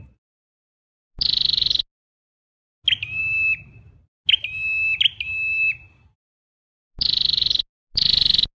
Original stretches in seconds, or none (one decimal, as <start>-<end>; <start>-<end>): 0.0-8.6